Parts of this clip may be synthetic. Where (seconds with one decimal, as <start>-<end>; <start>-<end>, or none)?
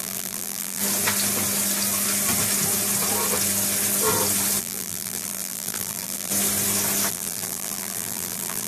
0.0-0.8; 4.6-6.3; 7.1-8.7